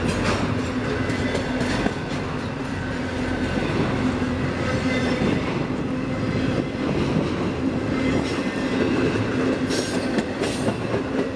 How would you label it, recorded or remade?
recorded